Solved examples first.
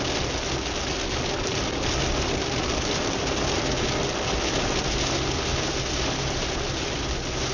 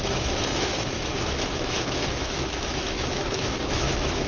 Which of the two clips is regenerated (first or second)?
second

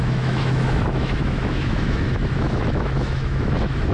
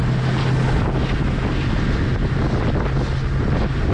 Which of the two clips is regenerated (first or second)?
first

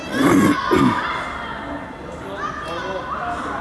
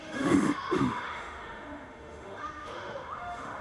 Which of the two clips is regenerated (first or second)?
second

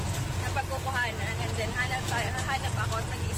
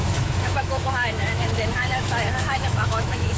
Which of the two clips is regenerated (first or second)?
second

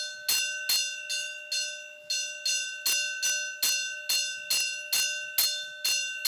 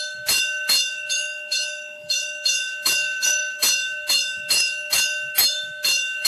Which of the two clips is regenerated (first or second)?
second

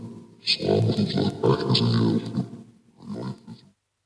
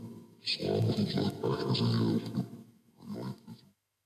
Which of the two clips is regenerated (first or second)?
second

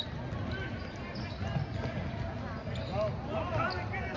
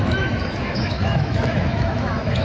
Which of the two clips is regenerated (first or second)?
second